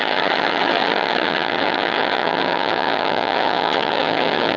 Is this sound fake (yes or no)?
yes